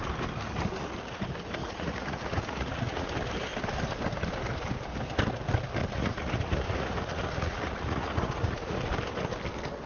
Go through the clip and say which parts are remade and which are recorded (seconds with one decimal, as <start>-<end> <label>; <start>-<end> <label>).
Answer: 0.0-1.6 recorded; 1.6-3.1 remade; 3.1-5.8 recorded; 5.8-8.8 remade; 8.8-9.9 recorded